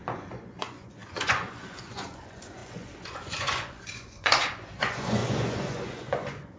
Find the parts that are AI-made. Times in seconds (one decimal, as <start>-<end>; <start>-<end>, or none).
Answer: 0.0-6.6

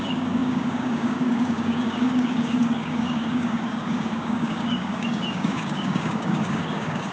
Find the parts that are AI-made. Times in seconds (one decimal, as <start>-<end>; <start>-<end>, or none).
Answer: 0.0-7.1

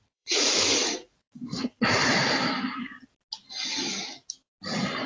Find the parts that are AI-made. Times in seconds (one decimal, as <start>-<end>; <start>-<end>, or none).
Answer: 0.0-1.7

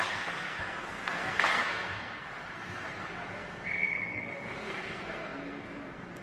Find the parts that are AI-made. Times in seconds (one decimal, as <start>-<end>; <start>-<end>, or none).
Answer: 0.0-6.2

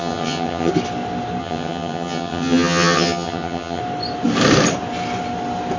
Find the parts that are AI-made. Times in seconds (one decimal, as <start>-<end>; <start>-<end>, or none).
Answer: 0.0-0.7; 1.4-3.8

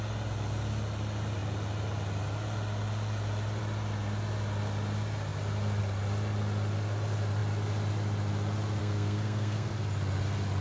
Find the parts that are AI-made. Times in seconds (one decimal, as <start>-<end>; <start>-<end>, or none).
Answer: 8.8-9.7

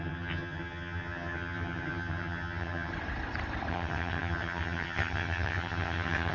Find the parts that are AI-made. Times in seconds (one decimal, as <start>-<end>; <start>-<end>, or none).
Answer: 0.0-2.9; 3.7-6.3

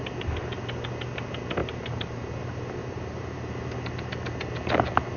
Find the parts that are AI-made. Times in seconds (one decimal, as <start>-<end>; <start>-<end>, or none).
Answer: 1.6-3.5